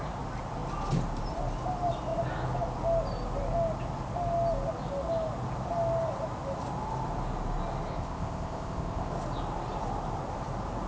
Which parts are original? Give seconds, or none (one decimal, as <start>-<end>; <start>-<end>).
0.0-7.9; 9.1-10.9